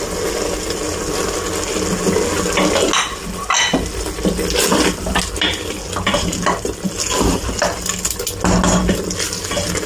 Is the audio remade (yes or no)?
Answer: no